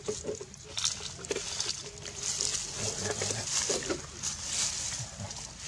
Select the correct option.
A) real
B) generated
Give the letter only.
A